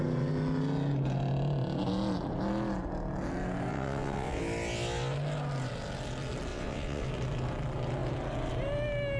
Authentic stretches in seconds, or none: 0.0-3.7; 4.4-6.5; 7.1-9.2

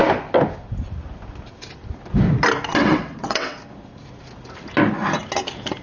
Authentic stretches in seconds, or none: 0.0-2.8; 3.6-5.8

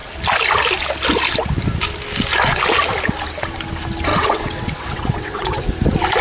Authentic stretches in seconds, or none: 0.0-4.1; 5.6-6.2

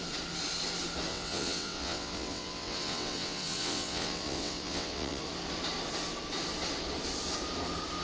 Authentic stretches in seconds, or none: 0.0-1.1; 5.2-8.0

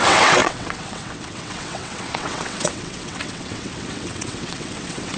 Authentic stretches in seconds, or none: none

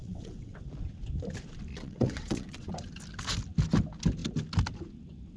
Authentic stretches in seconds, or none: 0.6-1.7; 2.7-5.4